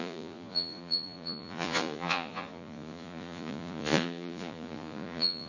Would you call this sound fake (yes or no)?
yes